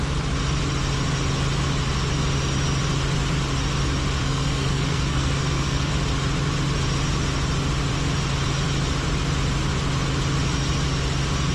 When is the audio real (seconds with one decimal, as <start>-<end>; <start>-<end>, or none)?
0.0-4.2; 5.9-11.5